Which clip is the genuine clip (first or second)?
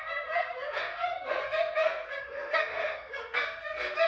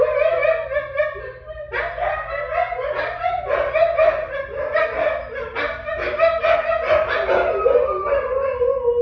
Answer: second